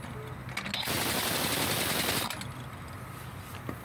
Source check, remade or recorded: recorded